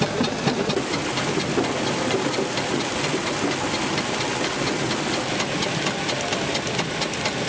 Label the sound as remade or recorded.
recorded